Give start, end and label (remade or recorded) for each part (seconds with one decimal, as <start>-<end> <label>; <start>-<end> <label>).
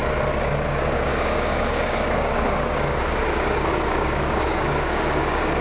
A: 0.0-0.7 recorded; 0.7-5.6 remade